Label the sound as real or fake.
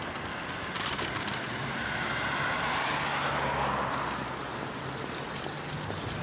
real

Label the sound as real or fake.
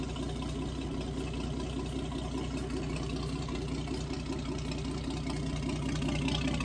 real